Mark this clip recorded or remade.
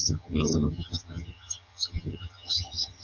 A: remade